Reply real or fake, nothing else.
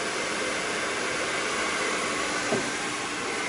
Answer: real